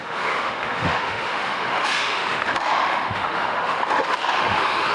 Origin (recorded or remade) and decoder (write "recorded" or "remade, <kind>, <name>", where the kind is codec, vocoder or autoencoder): remade, autoencoder, DAC-VAE